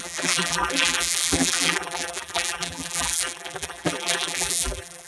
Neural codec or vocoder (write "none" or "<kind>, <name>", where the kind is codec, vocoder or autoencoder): vocoder, BigVGAN v2